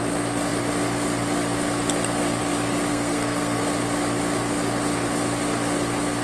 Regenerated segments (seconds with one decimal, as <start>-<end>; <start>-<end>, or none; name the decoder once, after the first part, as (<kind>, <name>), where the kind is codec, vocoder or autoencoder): 2.9-3.6 (codec, SNAC)